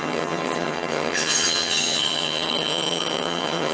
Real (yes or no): no